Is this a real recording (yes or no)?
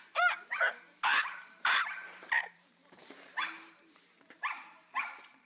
no